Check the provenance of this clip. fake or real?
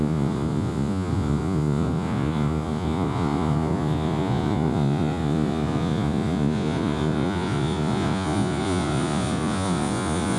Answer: fake